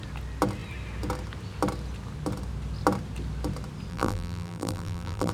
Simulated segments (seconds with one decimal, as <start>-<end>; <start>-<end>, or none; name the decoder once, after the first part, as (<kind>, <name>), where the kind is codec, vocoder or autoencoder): 3.9-5.3 (vocoder, BigVGAN v2)

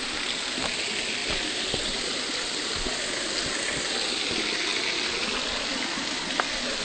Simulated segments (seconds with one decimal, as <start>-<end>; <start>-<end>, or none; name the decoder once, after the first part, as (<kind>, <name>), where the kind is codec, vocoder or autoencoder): 1.2-3.2 (vocoder, BigVGAN v2)

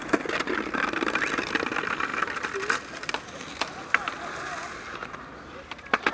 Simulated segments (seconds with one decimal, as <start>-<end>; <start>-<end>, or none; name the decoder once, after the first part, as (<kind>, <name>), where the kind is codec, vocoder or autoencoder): none

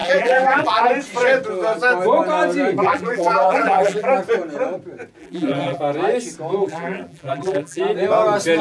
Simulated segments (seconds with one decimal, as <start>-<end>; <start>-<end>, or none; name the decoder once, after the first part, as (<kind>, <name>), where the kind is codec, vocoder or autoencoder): 0.0-0.8 (vocoder, BigVGAN v2); 2.8-4.1; 5.2-5.8; 6.6-7.8

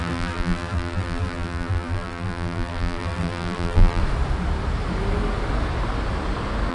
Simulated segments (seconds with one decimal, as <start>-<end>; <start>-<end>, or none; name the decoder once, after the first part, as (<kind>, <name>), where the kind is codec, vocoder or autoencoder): 0.0-4.0 (vocoder, BigVGAN v2)

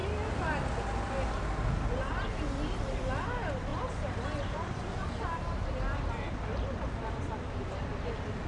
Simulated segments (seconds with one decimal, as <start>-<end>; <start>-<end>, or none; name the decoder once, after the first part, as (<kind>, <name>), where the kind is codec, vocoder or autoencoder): 3.7-4.7 (vocoder, BigVGAN v2)